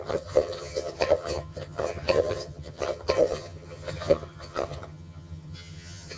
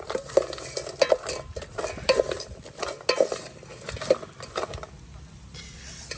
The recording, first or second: second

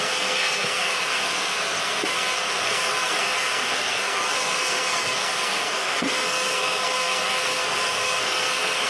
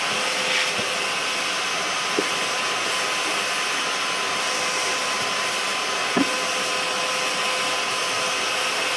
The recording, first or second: second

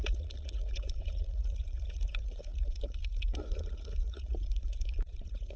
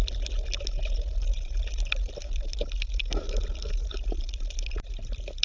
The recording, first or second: second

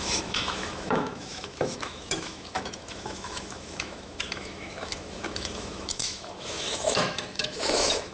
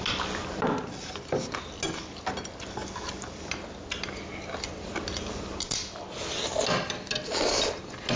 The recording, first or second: second